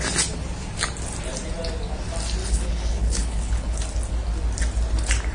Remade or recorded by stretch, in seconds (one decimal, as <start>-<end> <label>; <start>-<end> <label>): 0.0-2.4 recorded; 2.4-3.8 remade; 3.8-5.3 recorded